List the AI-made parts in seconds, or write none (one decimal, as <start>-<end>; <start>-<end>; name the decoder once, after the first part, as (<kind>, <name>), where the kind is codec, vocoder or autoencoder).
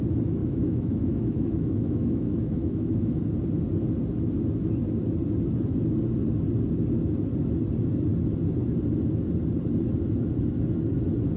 0.4-3.2 (autoencoder, DAC-VAE)